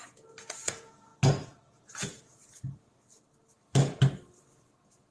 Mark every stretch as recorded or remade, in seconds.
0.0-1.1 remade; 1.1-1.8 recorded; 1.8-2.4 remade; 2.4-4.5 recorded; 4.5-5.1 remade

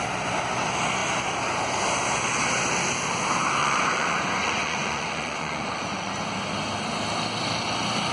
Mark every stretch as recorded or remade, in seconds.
0.0-3.6 recorded; 3.6-6.1 remade; 6.1-8.1 recorded